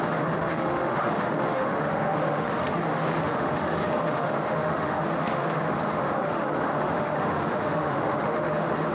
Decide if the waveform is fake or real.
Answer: fake